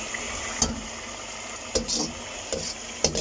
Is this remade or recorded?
recorded